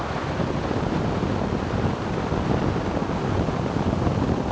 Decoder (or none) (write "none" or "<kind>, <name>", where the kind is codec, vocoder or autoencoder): none